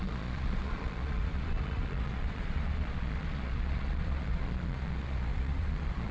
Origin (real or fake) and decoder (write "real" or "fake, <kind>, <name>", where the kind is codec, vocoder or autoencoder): fake, vocoder, Vocos